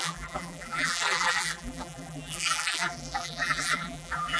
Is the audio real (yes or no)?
no